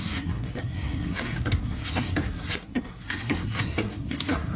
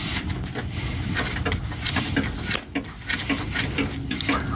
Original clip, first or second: second